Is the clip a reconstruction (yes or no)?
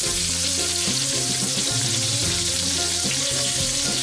yes